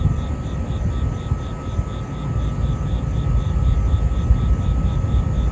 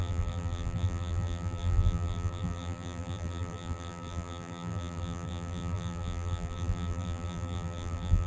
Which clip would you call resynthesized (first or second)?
second